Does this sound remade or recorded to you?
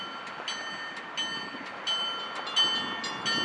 recorded